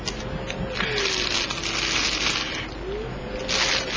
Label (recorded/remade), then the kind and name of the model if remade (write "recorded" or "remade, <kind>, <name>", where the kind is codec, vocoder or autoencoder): recorded